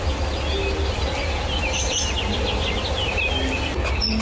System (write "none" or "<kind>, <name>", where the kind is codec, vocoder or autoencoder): none